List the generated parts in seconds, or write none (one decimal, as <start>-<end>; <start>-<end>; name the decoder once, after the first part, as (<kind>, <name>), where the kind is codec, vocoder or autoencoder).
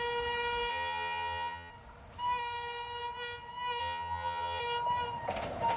0.7-1.7 (vocoder, HiFi-GAN); 3.8-4.6